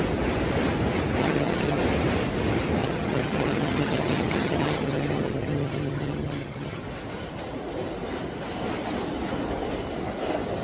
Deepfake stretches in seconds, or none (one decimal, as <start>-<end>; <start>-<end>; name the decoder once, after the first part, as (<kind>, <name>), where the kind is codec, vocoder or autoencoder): 1.2-1.8 (vocoder, HiFi-GAN); 2.8-6.8